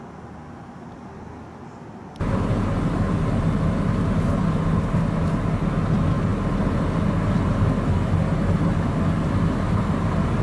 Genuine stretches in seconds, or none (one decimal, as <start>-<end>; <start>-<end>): 0.0-10.4